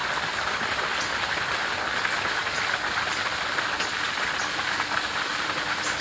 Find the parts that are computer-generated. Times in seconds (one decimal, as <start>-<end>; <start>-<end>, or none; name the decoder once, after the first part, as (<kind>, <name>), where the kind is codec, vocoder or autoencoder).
none

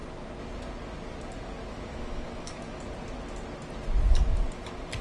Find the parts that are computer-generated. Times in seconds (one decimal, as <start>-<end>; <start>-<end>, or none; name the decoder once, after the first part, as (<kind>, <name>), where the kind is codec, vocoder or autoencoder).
1.7-2.8 (autoencoder, DAC-VAE)

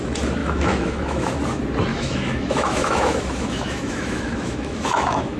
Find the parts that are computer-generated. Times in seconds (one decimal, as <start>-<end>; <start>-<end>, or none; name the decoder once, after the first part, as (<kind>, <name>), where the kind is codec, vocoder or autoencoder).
0.4-1.3 (autoencoder, DAC-VAE); 1.9-5.4

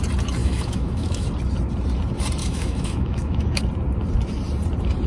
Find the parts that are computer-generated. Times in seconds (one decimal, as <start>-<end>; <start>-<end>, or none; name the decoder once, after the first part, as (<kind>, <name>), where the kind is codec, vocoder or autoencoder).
0.4-1.3 (autoencoder, DAC-VAE); 2.4-3.6

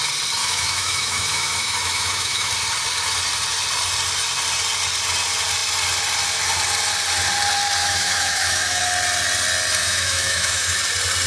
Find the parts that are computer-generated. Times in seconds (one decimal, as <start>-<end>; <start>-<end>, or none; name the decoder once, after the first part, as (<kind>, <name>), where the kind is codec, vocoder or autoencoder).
0.4-2.5 (autoencoder, DAC-VAE); 7.8-8.8; 9.8-10.8

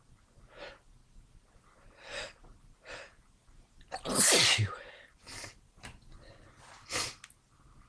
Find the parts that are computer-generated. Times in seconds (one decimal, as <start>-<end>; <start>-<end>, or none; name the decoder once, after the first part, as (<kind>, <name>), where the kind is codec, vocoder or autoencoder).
none

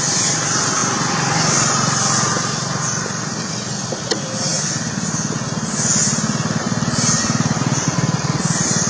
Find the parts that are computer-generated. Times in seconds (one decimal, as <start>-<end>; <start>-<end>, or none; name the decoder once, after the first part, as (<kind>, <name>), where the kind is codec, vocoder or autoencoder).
none

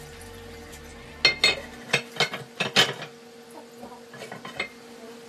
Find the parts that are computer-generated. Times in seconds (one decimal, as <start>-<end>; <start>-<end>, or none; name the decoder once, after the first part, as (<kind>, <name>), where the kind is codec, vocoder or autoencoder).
none